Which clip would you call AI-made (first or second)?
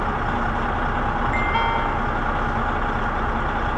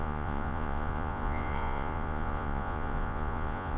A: second